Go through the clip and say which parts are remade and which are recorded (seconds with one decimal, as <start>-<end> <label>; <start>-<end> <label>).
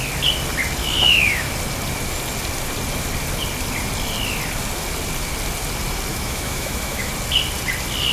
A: 0.0-0.8 recorded; 0.8-1.5 remade; 1.5-6.1 recorded; 6.1-7.1 remade; 7.1-8.1 recorded